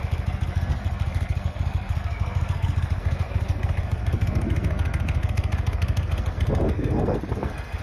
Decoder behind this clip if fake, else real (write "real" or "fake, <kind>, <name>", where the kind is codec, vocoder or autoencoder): fake, codec, SNAC